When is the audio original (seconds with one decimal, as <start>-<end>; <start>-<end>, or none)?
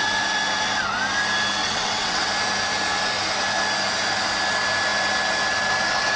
0.0-1.6; 2.3-6.2